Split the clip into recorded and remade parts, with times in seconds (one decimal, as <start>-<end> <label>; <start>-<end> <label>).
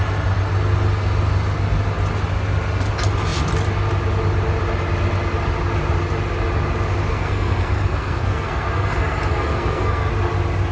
0.0-7.1 recorded; 7.1-10.1 remade; 10.1-10.7 recorded